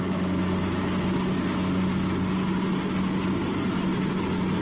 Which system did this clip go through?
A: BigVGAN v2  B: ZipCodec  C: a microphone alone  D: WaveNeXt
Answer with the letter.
C